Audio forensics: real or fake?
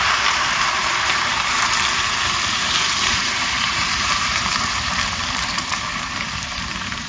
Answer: fake